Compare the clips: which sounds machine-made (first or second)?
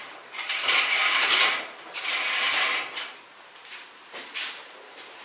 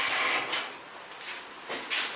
first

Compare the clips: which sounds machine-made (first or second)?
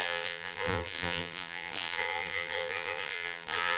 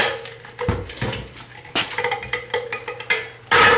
first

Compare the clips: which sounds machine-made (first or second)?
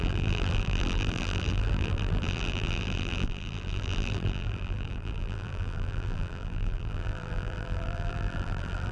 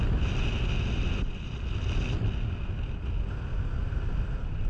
first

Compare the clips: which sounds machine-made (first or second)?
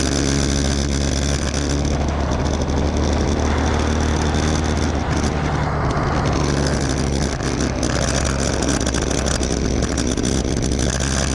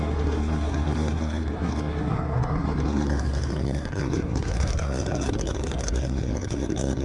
second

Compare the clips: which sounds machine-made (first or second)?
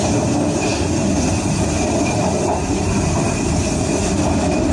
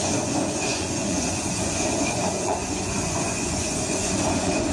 second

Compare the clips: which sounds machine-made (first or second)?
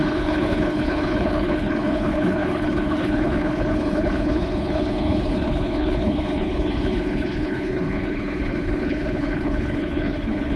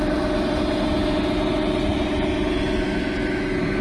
first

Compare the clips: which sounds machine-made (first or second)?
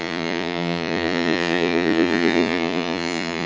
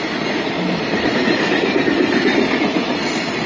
first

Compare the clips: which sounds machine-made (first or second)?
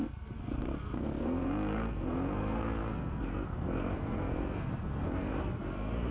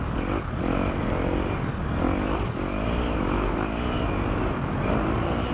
first